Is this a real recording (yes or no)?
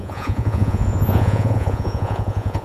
no